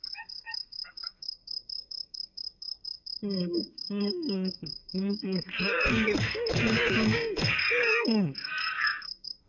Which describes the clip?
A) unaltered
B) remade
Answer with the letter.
B